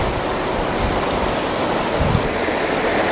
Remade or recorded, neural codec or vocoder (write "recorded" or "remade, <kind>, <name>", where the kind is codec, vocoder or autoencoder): recorded